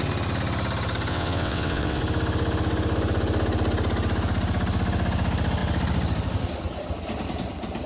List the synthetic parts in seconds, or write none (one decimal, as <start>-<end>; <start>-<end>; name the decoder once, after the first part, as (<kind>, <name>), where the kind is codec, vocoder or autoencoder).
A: 1.1-2.0 (vocoder, WaveNeXt)

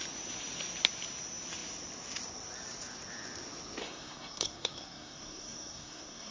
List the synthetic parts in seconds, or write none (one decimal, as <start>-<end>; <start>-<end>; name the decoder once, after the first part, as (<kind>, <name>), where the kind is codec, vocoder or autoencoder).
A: 3.8-6.3 (codec, SNAC)

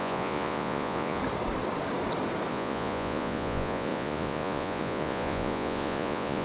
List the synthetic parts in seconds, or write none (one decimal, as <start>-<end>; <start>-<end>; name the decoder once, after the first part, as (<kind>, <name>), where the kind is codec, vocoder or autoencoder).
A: 0.0-1.2 (vocoder, Vocos); 2.5-6.4

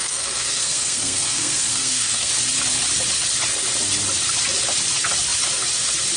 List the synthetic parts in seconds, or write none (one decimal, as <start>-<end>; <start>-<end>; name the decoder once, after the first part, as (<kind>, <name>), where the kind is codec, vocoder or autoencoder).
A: 0.0-2.3 (codec, SNAC)

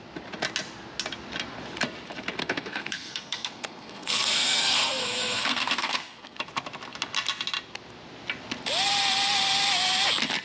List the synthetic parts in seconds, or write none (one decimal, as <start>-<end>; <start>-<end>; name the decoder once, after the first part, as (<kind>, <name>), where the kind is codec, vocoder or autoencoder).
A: 2.4-6.4 (codec, SNAC)

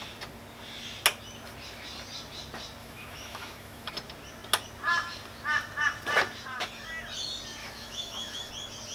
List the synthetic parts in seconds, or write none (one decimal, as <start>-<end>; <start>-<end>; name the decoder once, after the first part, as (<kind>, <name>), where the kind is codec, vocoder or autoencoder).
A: 2.8-3.9 (autoencoder, DAC-VAE); 7.6-8.5